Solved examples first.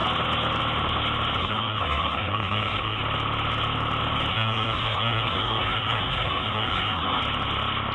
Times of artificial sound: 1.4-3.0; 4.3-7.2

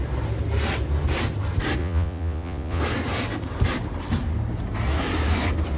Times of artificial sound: 1.8-2.8